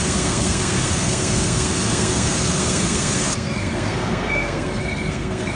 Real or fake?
fake